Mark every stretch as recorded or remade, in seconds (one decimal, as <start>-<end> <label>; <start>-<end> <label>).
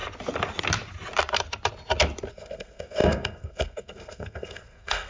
0.0-2.3 recorded; 2.3-5.1 remade